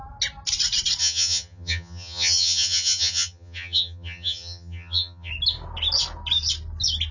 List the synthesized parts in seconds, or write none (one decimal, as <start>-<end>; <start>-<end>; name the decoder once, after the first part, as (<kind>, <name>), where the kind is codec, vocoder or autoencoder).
1.0-5.3 (vocoder, HiFi-GAN)